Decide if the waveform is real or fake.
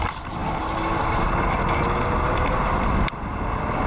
real